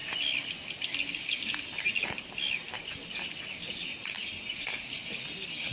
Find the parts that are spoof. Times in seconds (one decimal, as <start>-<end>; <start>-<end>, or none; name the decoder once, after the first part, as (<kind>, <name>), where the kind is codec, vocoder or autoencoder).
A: none